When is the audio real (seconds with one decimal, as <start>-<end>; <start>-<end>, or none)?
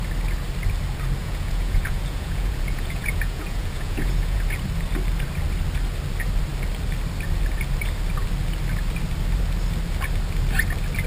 0.0-1.2; 4.4-11.1